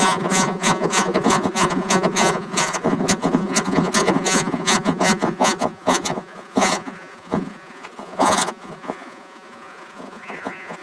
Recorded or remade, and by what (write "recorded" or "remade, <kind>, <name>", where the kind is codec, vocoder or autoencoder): remade, vocoder, Vocos